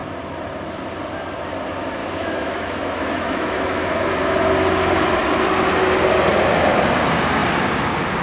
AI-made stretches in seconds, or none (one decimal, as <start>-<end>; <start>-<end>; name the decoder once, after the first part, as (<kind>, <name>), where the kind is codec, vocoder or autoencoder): 2.0-4.0 (autoencoder, DAC-VAE)